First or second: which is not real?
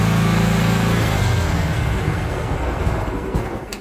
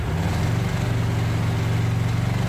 first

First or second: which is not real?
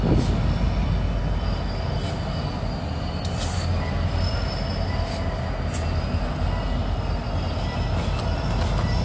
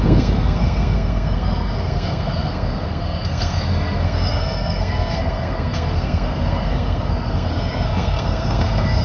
second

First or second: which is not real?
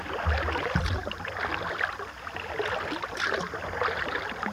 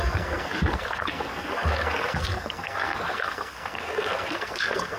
second